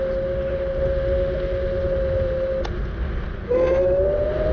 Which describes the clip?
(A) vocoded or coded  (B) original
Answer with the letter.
B